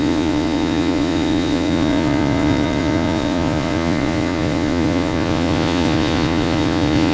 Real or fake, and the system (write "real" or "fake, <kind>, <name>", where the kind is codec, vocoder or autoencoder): fake, vocoder, Vocos